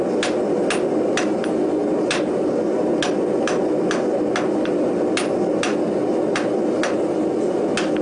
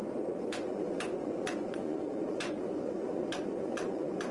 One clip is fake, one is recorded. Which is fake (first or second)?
second